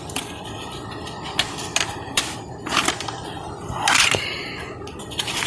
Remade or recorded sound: recorded